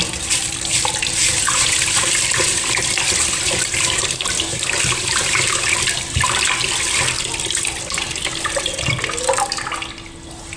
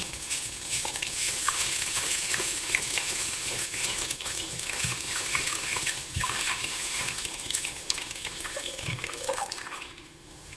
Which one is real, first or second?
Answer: first